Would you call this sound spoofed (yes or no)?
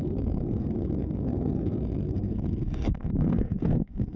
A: yes